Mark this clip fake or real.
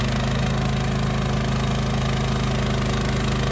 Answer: real